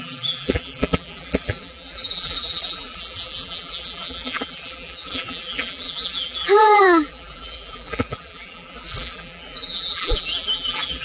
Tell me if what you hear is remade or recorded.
remade